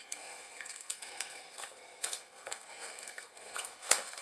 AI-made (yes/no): yes